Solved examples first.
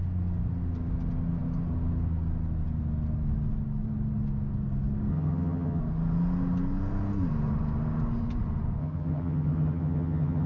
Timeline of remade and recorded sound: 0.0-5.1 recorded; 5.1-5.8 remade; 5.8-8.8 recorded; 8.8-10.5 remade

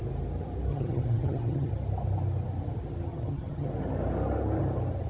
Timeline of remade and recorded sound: 0.0-0.7 recorded; 0.7-1.7 remade; 1.7-3.1 recorded; 3.1-3.7 remade; 3.7-5.1 recorded

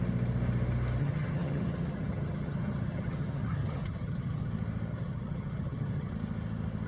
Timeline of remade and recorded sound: 0.0-1.0 recorded; 1.0-4.5 remade; 4.5-4.9 recorded; 4.9-6.1 remade; 6.1-6.9 recorded

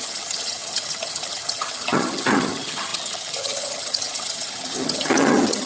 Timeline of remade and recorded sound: 0.0-5.7 remade